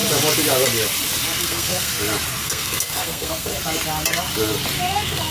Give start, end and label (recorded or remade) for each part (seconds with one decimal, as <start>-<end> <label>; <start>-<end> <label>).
0.0-1.4 recorded; 1.4-1.9 remade; 1.9-2.4 recorded; 2.4-3.5 remade; 3.5-4.8 recorded; 4.8-5.3 remade